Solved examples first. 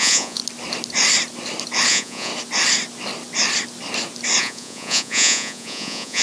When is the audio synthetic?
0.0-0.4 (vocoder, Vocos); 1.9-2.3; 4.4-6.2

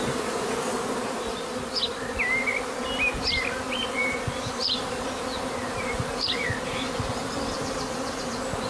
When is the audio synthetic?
4.6-7.6 (vocoder, BigVGAN v2)

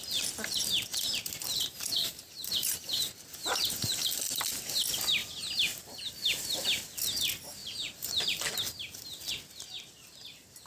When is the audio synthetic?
0.9-4.2 (vocoder, BigVGAN v2); 7.6-8.5

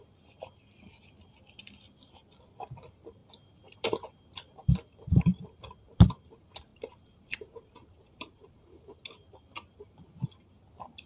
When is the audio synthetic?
6.7-8.6 (vocoder, BigVGAN v2)